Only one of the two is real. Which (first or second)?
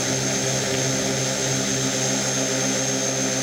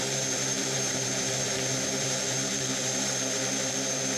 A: first